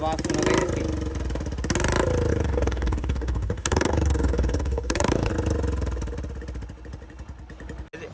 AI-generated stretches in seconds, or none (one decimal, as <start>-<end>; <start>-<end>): 2.3-5.3